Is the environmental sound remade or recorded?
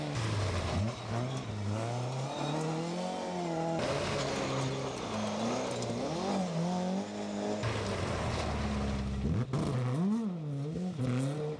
recorded